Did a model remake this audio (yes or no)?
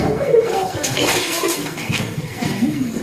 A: yes